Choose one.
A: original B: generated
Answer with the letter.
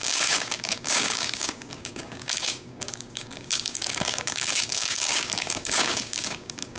B